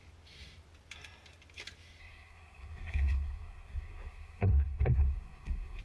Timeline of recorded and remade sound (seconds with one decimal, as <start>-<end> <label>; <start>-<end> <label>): 0.0-2.0 recorded; 2.0-5.8 remade